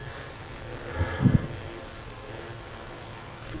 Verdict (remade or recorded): remade